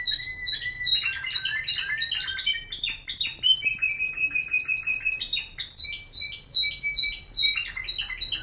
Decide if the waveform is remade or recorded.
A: recorded